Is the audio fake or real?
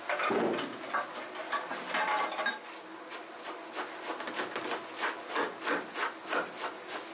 real